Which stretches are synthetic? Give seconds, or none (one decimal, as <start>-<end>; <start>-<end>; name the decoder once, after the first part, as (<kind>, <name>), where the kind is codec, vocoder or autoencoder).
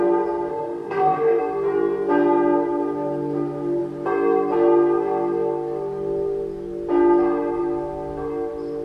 0.5-1.4 (autoencoder, DAC-VAE)